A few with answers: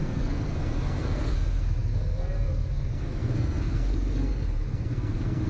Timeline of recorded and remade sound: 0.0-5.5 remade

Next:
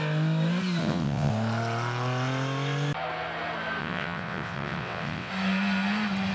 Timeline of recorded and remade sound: 0.0-0.8 recorded; 0.8-1.3 remade; 1.3-3.8 recorded; 3.8-5.3 remade; 5.3-6.3 recorded

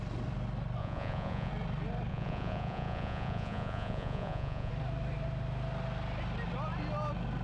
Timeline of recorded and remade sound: 0.0-0.8 recorded; 0.8-1.5 remade; 1.5-2.1 recorded; 2.1-4.7 remade; 4.7-7.4 recorded

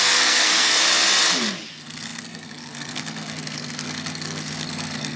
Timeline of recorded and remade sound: 0.0-0.7 remade; 0.7-1.7 recorded; 1.7-5.2 remade

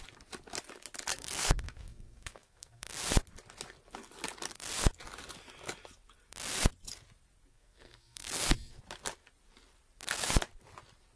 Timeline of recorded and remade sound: 0.0-1.1 recorded; 1.1-2.9 remade; 2.9-7.5 recorded; 7.5-8.8 remade; 8.8-11.2 recorded